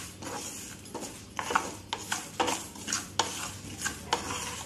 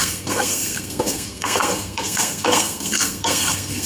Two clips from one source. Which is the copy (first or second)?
second